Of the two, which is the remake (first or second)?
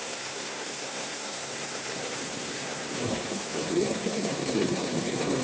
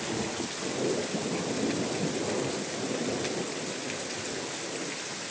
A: first